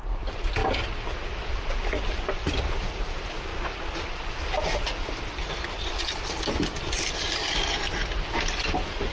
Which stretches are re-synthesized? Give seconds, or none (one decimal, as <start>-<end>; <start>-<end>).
none